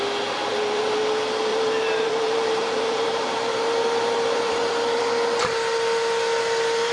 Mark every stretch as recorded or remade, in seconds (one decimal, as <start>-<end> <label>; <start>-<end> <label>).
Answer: 0.0-0.4 recorded; 0.4-1.0 remade; 1.0-1.5 recorded; 1.5-5.0 remade; 5.0-6.9 recorded